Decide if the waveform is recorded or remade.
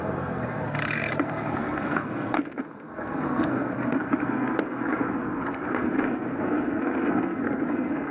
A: remade